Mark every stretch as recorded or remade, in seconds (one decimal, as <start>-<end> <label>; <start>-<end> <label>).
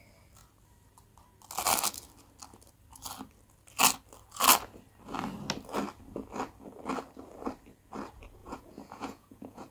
0.0-8.4 recorded; 8.4-9.7 remade